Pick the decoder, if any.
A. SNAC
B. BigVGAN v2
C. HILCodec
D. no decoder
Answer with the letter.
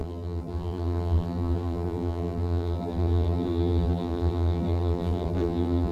B